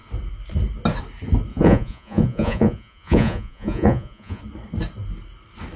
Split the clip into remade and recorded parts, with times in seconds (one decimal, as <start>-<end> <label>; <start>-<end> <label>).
0.0-1.5 recorded; 1.5-4.4 remade; 4.4-5.8 recorded